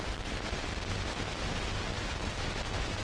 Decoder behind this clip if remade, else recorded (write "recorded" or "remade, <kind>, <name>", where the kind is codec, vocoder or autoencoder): recorded